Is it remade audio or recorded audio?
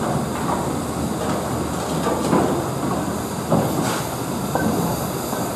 recorded